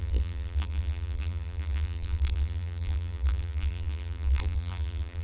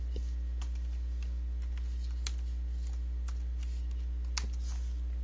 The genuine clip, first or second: second